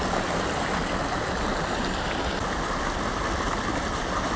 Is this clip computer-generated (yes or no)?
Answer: no